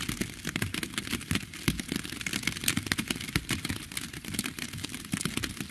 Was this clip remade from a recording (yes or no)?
no